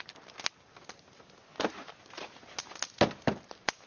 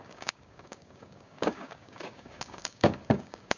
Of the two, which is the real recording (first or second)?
first